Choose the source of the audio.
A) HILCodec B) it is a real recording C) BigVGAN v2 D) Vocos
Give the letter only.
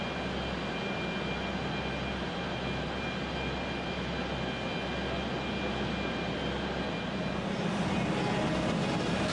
B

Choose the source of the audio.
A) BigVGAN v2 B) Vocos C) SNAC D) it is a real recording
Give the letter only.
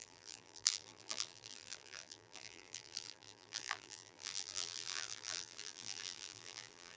A